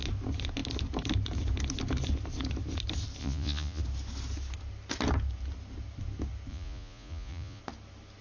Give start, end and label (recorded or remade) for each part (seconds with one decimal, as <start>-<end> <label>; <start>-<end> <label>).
0.0-3.2 recorded; 3.2-3.8 remade; 3.8-6.5 recorded; 6.5-7.6 remade; 7.6-8.2 recorded